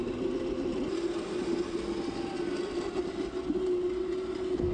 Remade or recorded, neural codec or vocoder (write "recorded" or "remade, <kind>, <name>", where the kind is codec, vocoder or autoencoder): recorded